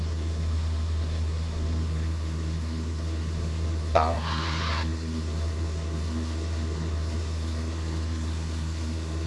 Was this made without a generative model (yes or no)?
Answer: no